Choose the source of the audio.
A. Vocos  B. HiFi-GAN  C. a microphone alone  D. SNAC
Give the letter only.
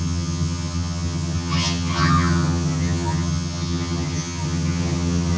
B